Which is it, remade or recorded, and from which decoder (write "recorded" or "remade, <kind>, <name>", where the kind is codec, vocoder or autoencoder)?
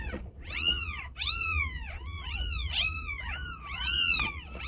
remade, vocoder, Vocos